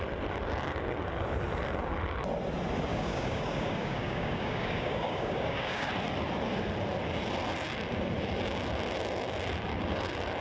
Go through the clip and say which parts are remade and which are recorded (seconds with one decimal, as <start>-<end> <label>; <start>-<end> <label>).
0.0-2.9 recorded; 2.9-5.9 remade; 5.9-10.4 recorded